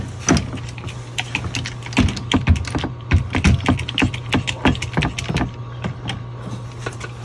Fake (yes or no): no